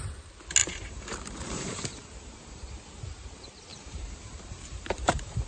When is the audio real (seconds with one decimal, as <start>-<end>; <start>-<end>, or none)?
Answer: 0.0-0.6; 2.7-3.7